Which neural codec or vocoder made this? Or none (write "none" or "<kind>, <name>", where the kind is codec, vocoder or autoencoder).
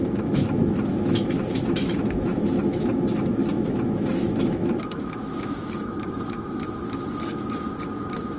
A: autoencoder, DAC-VAE